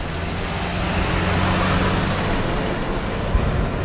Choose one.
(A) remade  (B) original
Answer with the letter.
B